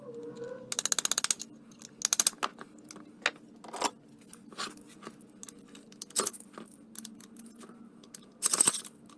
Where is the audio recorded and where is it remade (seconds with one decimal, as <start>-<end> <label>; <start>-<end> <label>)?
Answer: 0.0-9.2 recorded